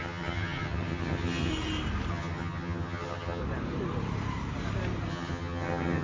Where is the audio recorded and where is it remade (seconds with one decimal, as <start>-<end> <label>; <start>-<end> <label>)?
0.0-1.5 remade; 1.5-2.1 recorded; 2.1-3.4 remade; 3.4-5.1 recorded; 5.1-6.0 remade